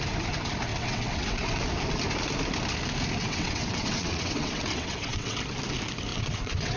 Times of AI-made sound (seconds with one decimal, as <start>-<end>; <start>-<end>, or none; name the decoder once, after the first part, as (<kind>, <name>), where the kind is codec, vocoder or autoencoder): 0.7-1.6 (vocoder, WaveNeXt); 3.2-5.4; 6.1-6.8